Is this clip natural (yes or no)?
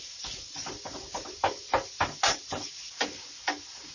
yes